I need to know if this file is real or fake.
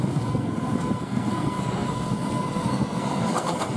fake